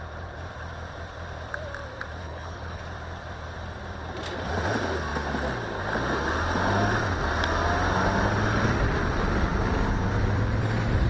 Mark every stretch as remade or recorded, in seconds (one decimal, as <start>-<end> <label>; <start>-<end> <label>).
0.0-2.2 recorded; 2.2-2.8 remade; 2.8-11.1 recorded